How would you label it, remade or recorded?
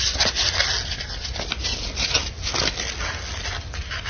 recorded